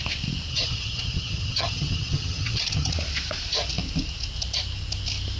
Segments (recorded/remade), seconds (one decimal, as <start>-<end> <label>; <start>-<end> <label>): 0.0-0.5 recorded; 0.5-2.9 remade; 2.9-5.4 recorded